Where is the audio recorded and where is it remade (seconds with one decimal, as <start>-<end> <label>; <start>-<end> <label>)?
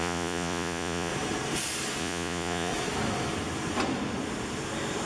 0.0-1.1 remade; 1.1-2.0 recorded; 2.0-2.7 remade; 2.7-5.1 recorded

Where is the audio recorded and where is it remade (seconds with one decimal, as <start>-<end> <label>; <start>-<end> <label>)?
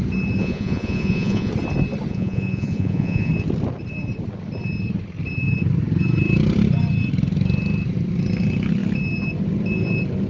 0.0-0.4 recorded; 0.4-1.5 remade; 1.5-2.1 recorded; 2.1-3.3 remade; 3.3-10.3 recorded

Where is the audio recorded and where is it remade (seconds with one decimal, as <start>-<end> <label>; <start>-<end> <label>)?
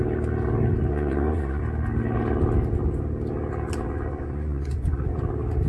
0.0-0.9 recorded; 0.9-1.6 remade; 1.6-4.1 recorded; 4.1-5.2 remade; 5.2-5.7 recorded